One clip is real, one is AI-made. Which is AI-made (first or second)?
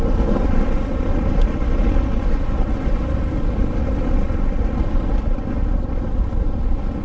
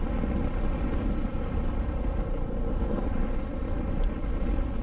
first